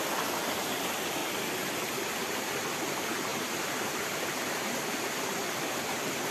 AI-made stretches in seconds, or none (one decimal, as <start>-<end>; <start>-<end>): 3.3-4.9